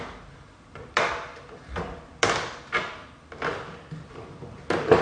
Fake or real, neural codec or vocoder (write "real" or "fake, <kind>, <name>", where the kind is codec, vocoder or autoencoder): fake, vocoder, BigVGAN v2